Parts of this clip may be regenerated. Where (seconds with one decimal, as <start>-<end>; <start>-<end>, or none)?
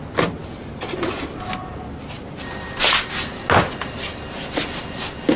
none